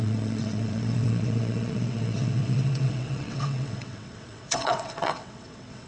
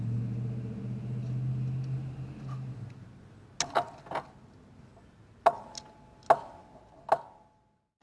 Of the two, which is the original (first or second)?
second